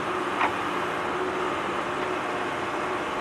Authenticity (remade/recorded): recorded